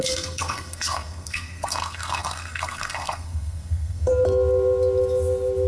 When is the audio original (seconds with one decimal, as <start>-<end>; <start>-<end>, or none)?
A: 4.1-5.7